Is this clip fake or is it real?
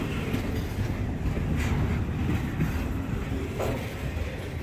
real